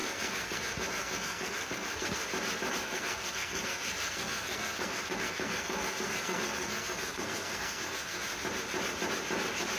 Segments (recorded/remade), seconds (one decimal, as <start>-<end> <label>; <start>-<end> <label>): 0.0-2.2 remade; 2.2-2.7 recorded; 2.7-8.3 remade; 8.3-9.8 recorded